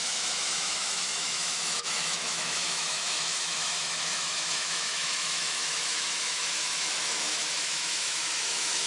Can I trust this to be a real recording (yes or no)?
no